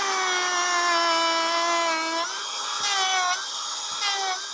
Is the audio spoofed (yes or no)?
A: no